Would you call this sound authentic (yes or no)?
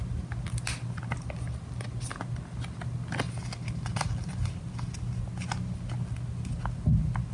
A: yes